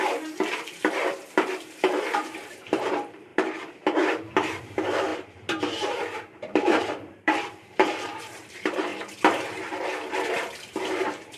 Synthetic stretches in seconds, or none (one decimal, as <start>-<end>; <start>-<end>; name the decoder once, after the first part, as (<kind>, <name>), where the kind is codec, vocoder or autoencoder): 0.0-8.9 (vocoder, BigVGAN v2); 10.6-11.4